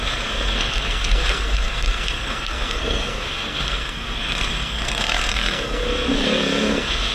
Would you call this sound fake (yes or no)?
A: yes